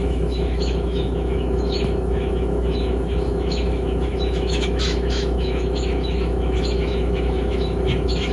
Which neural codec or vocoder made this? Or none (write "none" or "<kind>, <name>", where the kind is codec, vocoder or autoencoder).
autoencoder, DAC-VAE